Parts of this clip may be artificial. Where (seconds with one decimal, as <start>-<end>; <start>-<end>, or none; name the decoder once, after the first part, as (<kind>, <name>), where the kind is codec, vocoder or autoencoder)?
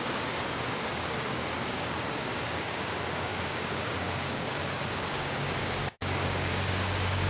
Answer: 0.0-7.3 (codec, DAC)